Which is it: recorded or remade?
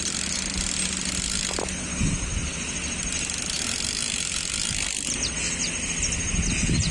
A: recorded